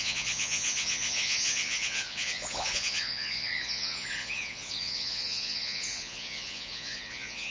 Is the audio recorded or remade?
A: remade